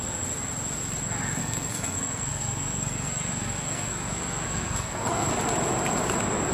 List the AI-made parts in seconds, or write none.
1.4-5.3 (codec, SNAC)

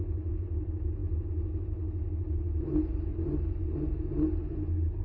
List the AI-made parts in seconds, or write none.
none

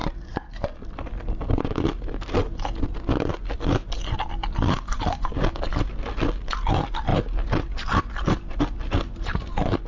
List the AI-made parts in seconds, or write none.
none